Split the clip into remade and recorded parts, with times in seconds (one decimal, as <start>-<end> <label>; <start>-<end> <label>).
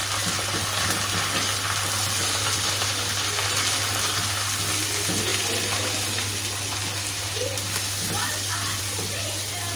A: 0.0-9.8 recorded